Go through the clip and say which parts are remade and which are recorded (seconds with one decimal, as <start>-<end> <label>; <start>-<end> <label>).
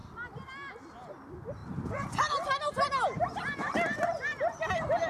0.0-1.1 recorded; 1.1-1.6 remade; 1.6-2.3 recorded; 2.3-5.1 remade